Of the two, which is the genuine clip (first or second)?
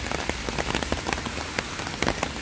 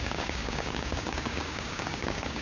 first